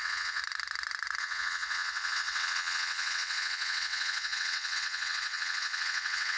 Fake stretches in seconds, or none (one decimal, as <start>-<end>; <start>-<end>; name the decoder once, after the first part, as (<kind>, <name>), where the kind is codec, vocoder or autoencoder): 0.0-0.4 (vocoder, WaveNeXt); 1.2-6.4